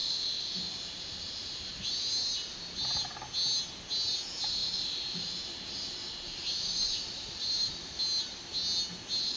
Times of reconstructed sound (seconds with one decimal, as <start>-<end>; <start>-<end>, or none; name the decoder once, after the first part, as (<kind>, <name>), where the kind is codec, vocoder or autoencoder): 0.0-1.9 (vocoder, BigVGAN v2); 4.6-8.0